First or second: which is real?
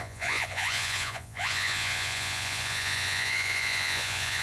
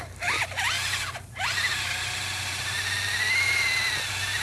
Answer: second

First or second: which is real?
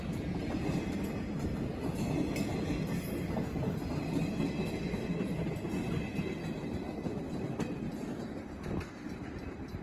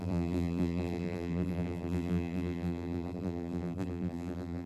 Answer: first